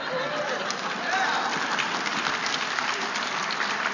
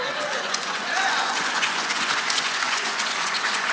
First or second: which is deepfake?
second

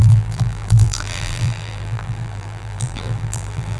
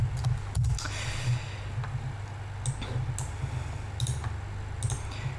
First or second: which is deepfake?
first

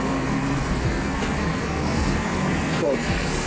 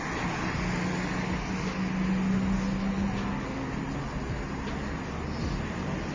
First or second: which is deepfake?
first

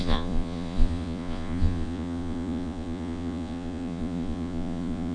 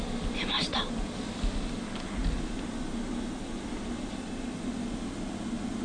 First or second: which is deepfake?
first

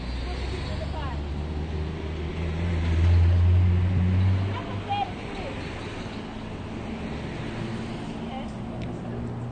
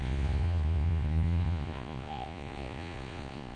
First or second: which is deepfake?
second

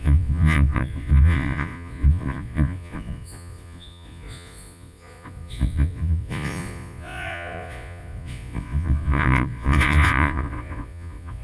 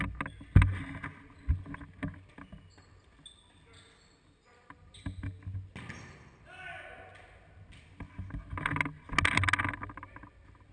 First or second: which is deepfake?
first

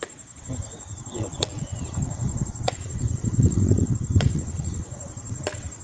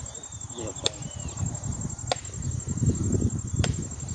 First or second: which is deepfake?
first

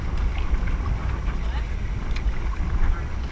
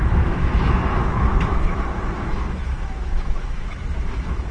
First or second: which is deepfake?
second